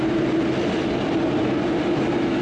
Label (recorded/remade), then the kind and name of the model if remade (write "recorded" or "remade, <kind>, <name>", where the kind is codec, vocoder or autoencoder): recorded